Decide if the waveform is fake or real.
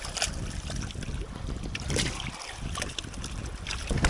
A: real